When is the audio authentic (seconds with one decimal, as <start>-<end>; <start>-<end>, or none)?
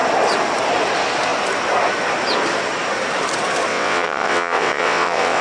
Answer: 0.0-3.7